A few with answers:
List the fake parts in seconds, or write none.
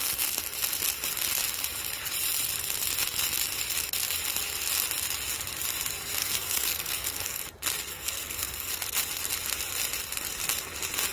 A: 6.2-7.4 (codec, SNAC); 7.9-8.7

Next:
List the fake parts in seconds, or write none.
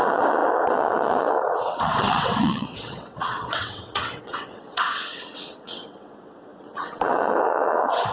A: 0.0-8.1 (vocoder, WaveNeXt)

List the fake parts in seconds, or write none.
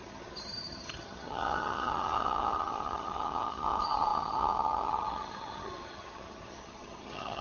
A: 0.0-7.4 (vocoder, HiFi-GAN)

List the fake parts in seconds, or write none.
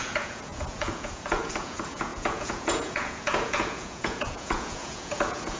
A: 0.0-5.6 (vocoder, Vocos)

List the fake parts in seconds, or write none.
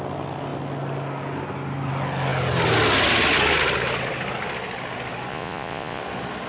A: 5.3-6.0 (vocoder, Vocos)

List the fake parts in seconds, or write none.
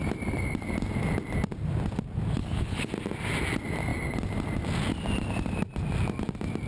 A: 2.4-2.9 (codec, HILCodec)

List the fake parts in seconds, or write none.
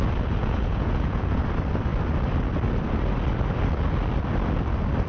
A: 0.4-1.4 (vocoder, Vocos)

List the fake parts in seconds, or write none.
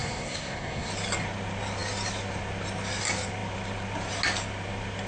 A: 0.0-0.9 (codec, SNAC)